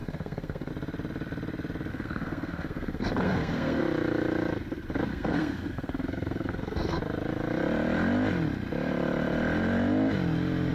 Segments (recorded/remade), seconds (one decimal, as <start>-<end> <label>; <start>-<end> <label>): 0.0-0.7 remade; 0.7-1.9 recorded; 1.9-3.8 remade; 3.8-5.1 recorded; 5.1-7.0 remade; 7.0-10.7 recorded